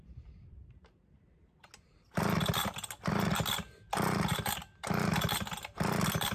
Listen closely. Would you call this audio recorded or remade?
recorded